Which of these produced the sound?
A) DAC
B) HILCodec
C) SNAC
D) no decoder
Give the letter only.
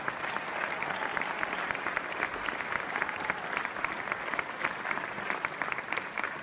D